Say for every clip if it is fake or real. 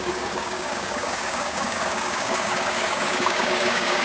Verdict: fake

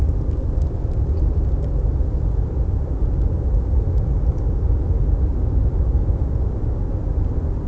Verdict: real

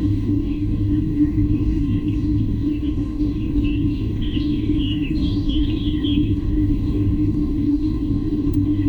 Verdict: fake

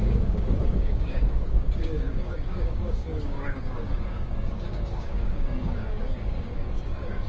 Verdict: fake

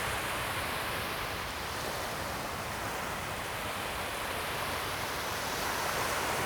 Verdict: real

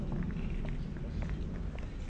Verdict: real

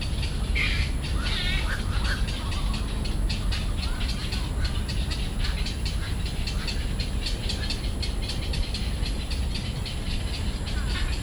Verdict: real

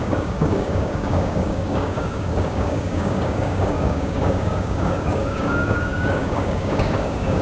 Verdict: fake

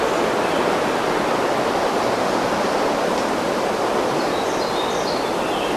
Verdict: real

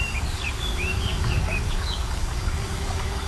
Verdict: fake